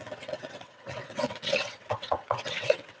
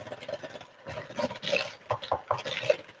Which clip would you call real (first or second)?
second